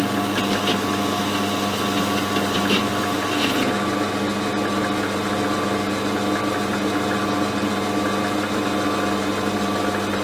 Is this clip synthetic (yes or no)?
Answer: no